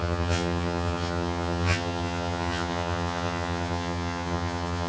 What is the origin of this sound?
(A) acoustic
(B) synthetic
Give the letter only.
B